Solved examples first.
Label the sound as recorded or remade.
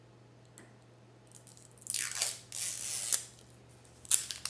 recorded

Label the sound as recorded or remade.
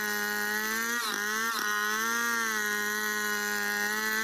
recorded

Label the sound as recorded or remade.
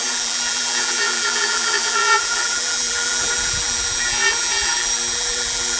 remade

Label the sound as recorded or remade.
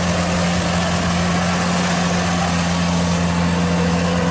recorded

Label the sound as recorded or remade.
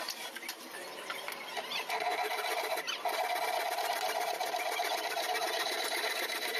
remade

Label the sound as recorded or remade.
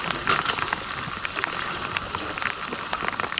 recorded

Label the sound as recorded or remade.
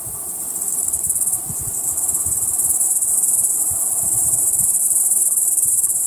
remade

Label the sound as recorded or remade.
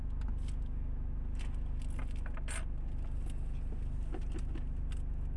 recorded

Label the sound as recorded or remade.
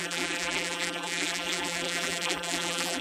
remade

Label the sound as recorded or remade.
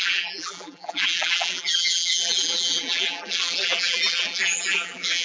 remade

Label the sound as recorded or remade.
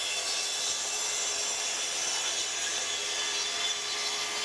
recorded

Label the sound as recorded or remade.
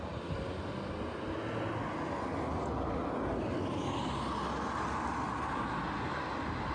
recorded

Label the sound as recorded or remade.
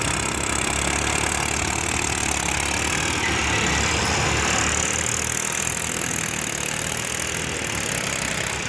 recorded